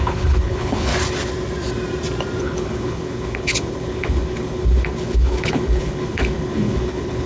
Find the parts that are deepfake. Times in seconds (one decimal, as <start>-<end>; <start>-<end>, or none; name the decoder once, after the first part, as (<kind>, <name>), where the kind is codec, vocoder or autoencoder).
0.0-0.9 (codec, HILCodec); 2.4-7.3